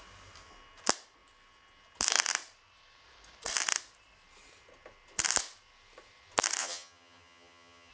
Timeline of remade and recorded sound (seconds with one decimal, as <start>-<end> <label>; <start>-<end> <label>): 0.0-6.6 recorded; 6.6-7.9 remade